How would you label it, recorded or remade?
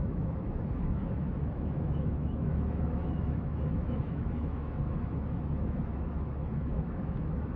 remade